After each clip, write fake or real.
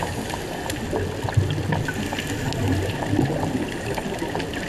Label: real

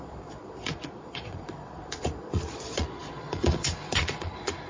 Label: fake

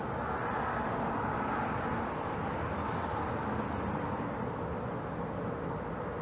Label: real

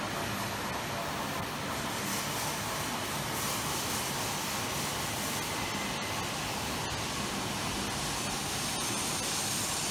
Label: real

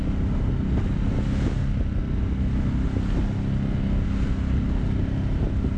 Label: real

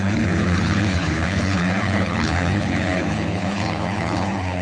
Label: fake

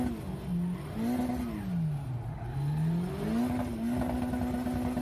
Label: real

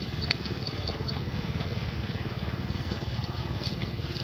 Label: fake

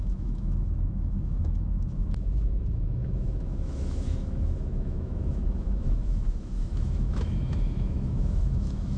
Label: fake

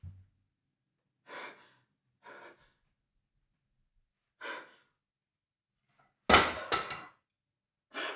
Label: real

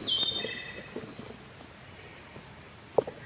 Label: real